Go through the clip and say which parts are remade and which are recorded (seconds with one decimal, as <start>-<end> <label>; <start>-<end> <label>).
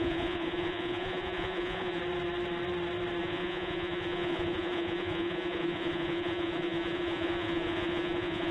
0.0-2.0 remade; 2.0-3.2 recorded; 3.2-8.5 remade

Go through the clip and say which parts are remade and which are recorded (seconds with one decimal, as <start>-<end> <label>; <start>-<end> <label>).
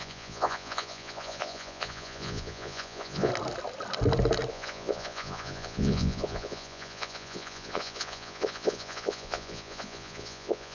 0.0-3.3 remade; 3.3-4.5 recorded; 4.5-10.7 remade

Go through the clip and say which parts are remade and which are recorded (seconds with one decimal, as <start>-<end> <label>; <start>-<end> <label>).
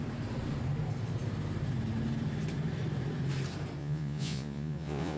0.0-3.8 recorded; 3.8-5.2 remade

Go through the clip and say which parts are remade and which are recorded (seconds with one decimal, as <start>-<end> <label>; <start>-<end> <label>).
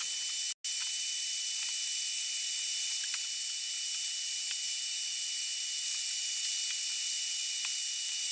0.0-8.3 recorded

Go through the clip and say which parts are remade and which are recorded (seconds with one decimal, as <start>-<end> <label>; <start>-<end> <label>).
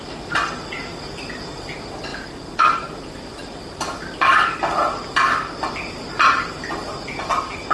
0.0-7.7 recorded